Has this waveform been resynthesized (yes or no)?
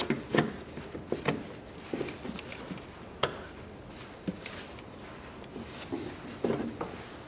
no